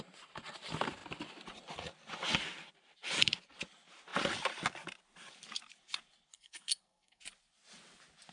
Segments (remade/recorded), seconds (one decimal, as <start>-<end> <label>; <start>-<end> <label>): 0.0-6.3 recorded; 6.3-7.2 remade; 7.2-8.3 recorded